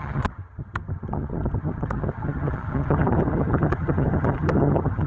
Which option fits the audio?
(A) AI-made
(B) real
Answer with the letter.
A